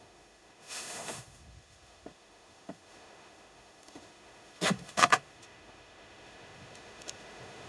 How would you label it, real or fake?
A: fake